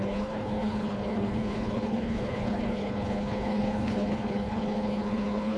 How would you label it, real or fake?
fake